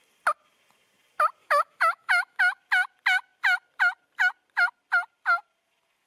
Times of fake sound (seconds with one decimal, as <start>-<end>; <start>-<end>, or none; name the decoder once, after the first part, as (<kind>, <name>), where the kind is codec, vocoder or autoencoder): 1.4-2.4 (autoencoder, DAC-VAE)